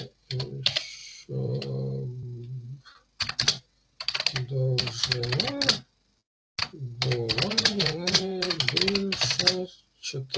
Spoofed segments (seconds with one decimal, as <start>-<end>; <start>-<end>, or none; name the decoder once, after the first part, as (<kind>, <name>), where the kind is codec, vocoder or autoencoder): 1.0-1.6 (vocoder, Vocos); 7.5-8.6